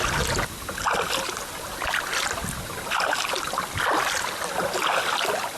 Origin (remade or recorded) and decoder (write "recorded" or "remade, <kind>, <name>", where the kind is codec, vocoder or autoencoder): recorded